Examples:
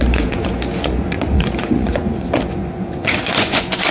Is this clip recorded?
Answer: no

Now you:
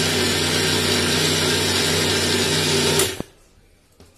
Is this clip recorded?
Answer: yes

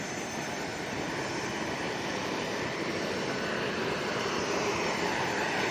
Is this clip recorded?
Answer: no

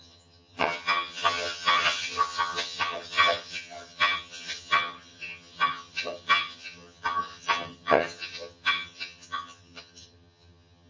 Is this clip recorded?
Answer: no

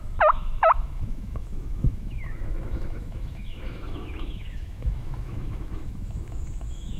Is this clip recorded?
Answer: no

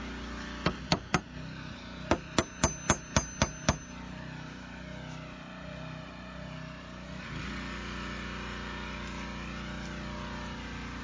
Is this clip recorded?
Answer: yes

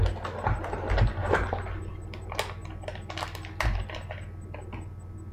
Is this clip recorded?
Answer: yes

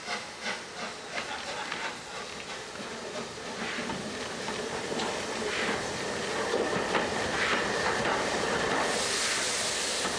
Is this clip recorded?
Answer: yes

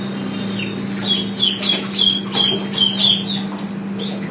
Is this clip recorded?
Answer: yes